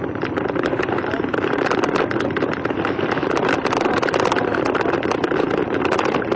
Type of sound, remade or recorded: recorded